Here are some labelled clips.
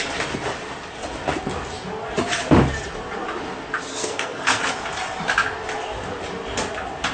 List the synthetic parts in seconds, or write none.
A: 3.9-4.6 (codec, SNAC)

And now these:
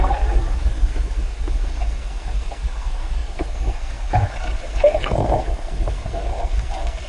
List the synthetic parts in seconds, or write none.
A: 0.0-7.1 (codec, SNAC)

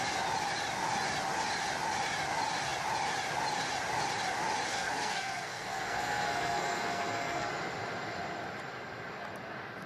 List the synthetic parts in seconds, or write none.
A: 4.7-7.5 (codec, SNAC)

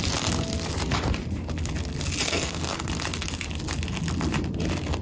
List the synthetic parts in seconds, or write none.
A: 2.3-2.9 (codec, SNAC)

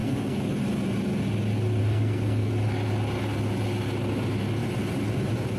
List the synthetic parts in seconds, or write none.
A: 0.0-0.5 (codec, SNAC); 1.8-2.5

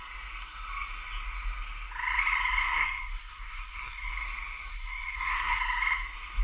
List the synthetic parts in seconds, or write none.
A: 2.6-4.1 (codec, SNAC); 4.7-5.6

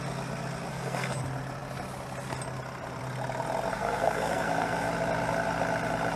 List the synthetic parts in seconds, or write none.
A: 0.7-1.2 (codec, SNAC); 3.7-4.9